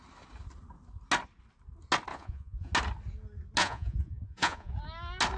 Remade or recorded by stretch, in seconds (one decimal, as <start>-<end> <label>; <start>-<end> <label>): 0.0-2.1 recorded; 2.1-2.7 remade; 2.7-3.6 recorded; 3.6-4.7 remade; 4.7-5.4 recorded